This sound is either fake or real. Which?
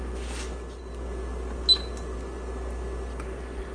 real